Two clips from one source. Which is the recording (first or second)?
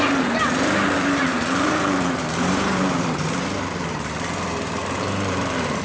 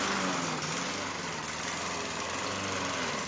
second